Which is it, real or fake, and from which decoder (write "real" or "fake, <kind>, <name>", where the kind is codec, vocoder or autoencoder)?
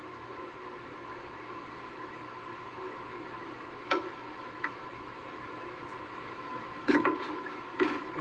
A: fake, autoencoder, DAC-VAE